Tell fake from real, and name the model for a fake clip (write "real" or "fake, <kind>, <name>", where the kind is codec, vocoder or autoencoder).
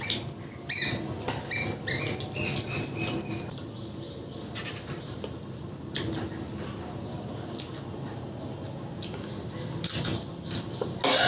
real